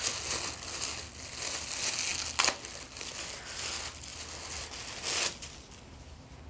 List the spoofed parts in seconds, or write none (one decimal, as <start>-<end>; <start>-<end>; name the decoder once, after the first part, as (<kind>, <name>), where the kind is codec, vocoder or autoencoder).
none